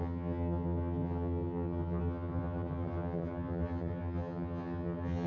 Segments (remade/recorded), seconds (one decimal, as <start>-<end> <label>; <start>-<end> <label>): 0.0-5.3 remade